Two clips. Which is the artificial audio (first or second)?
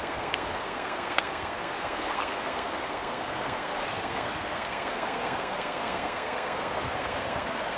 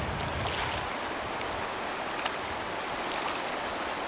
first